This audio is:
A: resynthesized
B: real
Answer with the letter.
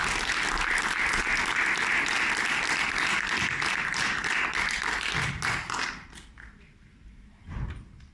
B